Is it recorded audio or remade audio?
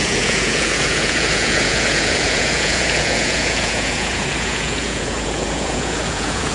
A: remade